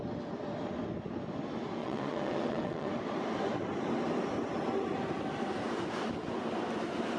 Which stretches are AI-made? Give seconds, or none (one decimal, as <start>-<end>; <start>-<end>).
1.8-2.9